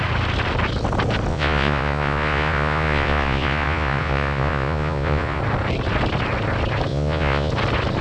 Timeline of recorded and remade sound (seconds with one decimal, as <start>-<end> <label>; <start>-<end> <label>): 0.0-1.3 recorded; 1.3-5.4 remade; 5.4-6.9 recorded; 6.9-7.5 remade; 7.5-8.0 recorded